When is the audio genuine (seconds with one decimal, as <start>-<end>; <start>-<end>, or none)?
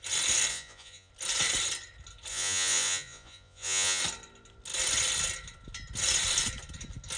0.0-0.5; 1.1-2.3; 4.0-7.2